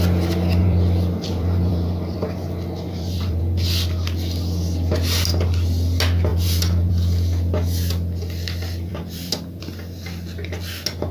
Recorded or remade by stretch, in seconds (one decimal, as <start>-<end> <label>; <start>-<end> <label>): 0.0-0.6 recorded; 0.6-3.4 remade; 3.4-6.3 recorded; 6.3-6.9 remade; 6.9-8.9 recorded; 8.9-9.6 remade; 9.6-11.1 recorded